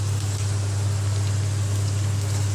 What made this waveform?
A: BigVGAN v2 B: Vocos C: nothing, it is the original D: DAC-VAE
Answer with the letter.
C